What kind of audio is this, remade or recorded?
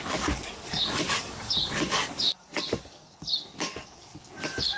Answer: remade